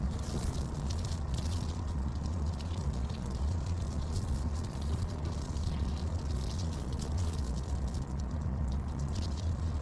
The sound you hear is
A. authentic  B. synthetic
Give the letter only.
B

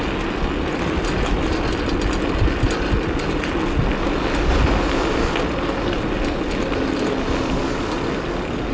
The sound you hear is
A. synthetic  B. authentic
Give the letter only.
B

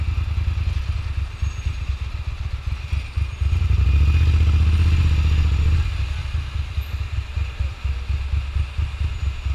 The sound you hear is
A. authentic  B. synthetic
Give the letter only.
A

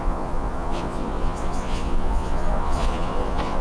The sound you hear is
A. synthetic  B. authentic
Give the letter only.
A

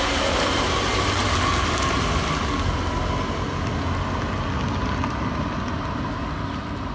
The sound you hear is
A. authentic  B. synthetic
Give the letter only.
A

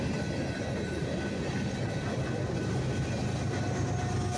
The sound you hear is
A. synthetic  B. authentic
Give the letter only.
B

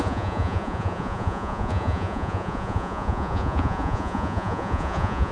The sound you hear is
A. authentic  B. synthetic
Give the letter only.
B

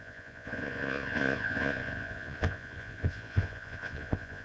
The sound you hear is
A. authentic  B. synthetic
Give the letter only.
B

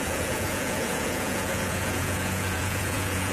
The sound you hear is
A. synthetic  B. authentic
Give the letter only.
A